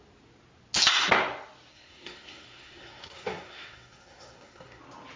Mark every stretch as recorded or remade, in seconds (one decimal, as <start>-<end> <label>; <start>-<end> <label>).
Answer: 0.0-1.7 recorded; 1.7-4.8 remade; 4.8-5.2 recorded